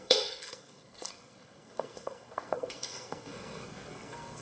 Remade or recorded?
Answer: remade